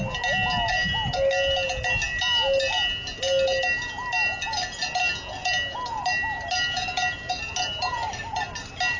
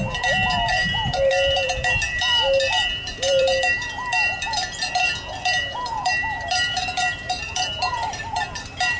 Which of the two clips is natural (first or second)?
first